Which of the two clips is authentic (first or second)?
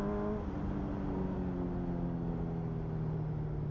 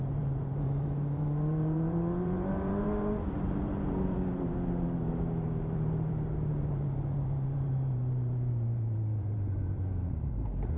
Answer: first